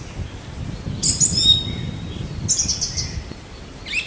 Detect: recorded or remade recorded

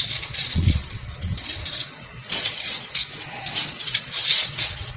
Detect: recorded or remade remade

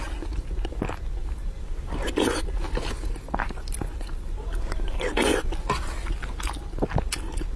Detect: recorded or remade recorded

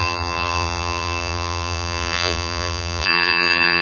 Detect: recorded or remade remade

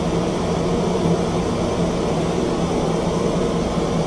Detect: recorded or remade recorded